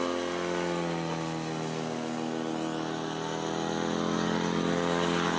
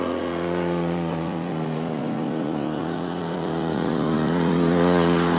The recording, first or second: first